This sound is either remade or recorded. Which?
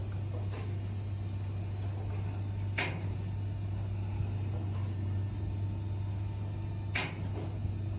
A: recorded